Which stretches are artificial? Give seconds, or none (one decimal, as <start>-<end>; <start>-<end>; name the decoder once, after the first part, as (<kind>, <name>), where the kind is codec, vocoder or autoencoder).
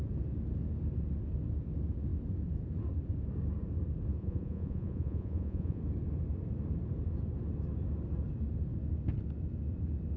4.2-5.8 (vocoder, Vocos)